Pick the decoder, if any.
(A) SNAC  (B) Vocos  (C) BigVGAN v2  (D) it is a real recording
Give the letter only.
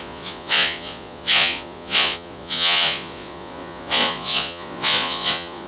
B